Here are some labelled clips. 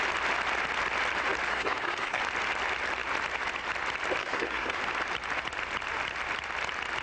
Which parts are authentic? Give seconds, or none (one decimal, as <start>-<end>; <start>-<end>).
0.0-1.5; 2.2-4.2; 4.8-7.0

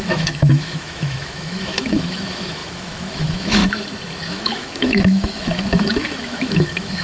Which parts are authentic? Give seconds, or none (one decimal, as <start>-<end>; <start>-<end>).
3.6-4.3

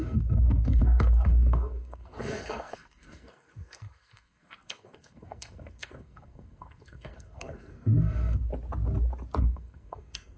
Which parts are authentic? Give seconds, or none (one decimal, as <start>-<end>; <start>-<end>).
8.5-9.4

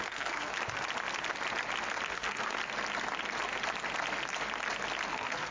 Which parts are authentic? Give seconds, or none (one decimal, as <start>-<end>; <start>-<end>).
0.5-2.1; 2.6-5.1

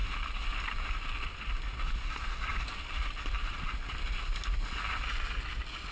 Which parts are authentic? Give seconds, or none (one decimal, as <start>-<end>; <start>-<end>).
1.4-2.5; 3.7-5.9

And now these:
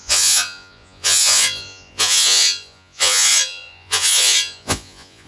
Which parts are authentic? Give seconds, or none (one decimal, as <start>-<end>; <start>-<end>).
none

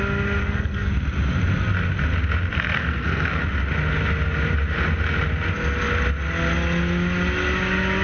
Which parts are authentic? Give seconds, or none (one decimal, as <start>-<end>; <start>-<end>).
0.0-0.4; 0.9-2.5; 3.4-8.0

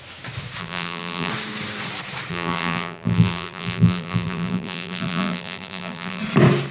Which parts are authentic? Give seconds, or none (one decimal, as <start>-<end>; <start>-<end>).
0.0-0.6; 1.3-2.3; 6.2-6.7